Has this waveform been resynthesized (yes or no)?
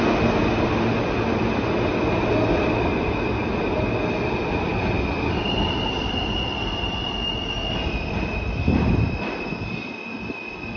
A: no